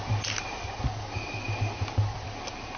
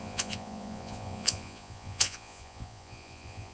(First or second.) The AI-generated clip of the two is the second